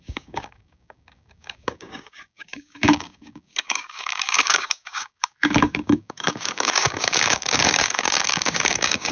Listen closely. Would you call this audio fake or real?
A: fake